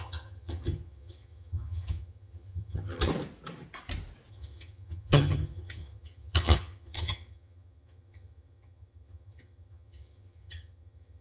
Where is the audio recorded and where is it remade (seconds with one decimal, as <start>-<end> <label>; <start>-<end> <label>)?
0.0-3.1 remade; 3.1-4.3 recorded; 4.3-11.2 remade